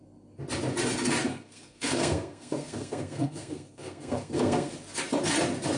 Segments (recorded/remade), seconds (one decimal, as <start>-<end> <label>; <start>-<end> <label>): 0.0-1.3 recorded; 1.3-4.7 remade; 4.7-5.8 recorded